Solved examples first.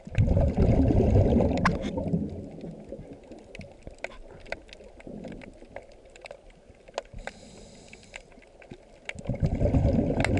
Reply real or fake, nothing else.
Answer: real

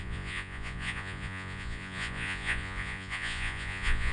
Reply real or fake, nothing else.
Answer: fake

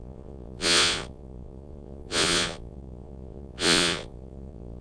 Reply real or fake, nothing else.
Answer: fake